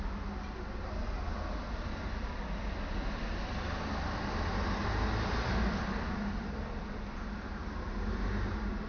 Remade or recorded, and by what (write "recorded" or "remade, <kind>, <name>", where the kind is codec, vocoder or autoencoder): recorded